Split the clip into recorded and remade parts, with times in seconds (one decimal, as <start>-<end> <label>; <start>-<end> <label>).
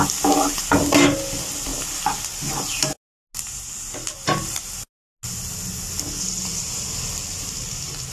0.0-8.1 recorded